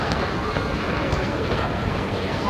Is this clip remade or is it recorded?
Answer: remade